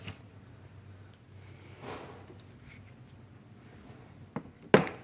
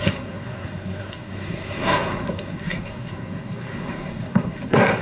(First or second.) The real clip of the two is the first